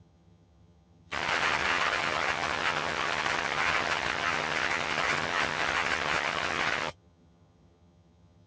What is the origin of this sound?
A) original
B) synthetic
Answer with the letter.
B